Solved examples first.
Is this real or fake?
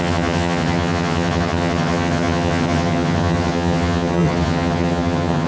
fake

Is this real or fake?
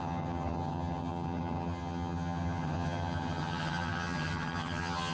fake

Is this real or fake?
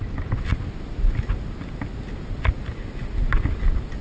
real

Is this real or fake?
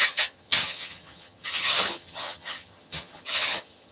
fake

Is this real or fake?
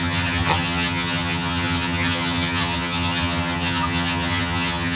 fake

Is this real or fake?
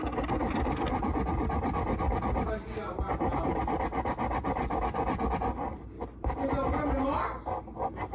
real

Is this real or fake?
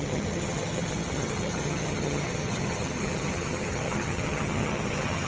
fake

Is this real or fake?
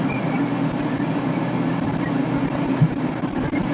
real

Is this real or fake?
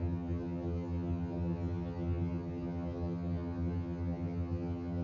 fake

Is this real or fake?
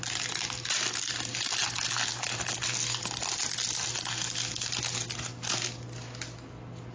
real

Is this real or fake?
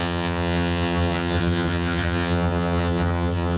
fake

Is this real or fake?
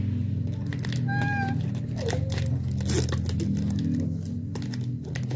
real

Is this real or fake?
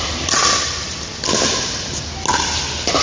real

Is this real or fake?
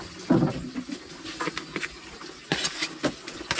real